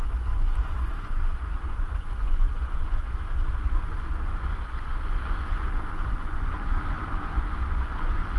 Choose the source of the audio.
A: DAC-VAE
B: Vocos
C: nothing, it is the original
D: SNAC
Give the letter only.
B